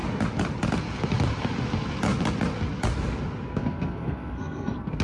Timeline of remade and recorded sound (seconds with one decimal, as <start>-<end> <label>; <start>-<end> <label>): 0.0-3.5 recorded; 3.5-5.0 remade